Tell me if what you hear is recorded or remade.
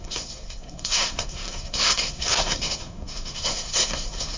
remade